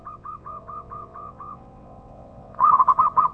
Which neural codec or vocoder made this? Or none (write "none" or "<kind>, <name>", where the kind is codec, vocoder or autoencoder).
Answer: vocoder, WaveNeXt